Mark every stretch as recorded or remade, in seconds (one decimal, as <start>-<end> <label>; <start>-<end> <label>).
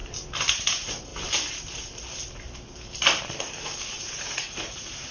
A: 0.0-0.5 recorded; 0.5-1.1 remade; 1.1-3.9 recorded; 3.9-5.1 remade